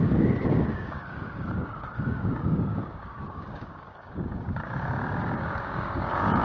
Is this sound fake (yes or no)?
yes